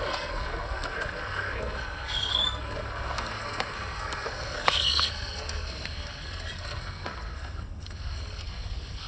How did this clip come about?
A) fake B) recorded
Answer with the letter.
A